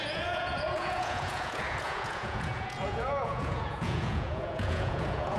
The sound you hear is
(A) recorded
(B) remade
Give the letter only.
B